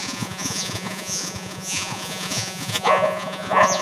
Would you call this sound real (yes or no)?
no